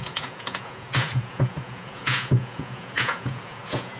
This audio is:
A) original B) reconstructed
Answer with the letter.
B